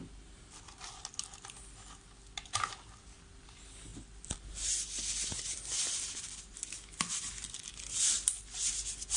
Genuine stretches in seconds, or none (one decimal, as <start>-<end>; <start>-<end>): 0.0-9.2